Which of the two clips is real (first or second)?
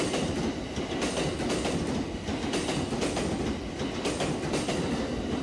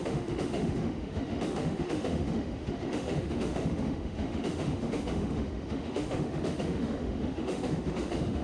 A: first